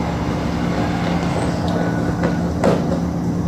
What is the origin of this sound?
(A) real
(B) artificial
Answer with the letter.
A